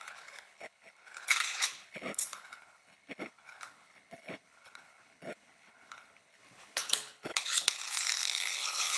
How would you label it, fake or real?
fake